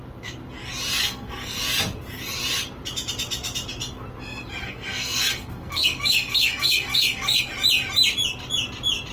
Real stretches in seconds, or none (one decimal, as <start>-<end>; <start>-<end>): 0.0-1.0; 1.6-4.6; 7.4-9.1